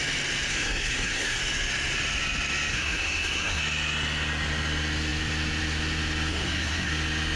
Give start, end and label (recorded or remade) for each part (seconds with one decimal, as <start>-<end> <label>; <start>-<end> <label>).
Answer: 0.0-0.5 recorded; 0.5-1.4 remade; 1.4-2.7 recorded; 2.7-3.6 remade; 3.6-6.3 recorded; 6.3-6.9 remade; 6.9-7.4 recorded